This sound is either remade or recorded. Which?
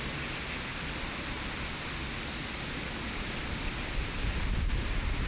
recorded